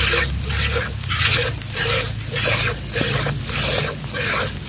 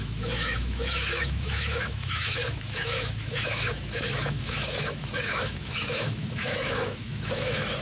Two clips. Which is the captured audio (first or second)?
first